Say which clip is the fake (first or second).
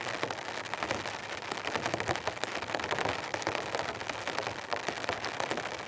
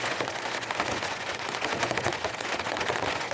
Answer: second